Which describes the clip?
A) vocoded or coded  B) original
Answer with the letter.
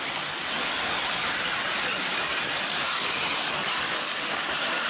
B